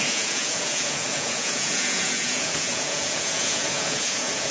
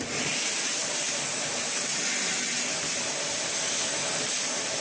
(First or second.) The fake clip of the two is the first